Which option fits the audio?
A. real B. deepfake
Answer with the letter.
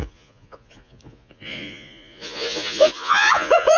B